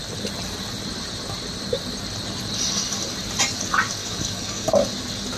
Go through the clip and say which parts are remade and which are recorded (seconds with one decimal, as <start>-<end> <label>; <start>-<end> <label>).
0.0-4.0 recorded; 4.0-4.7 remade; 4.7-5.4 recorded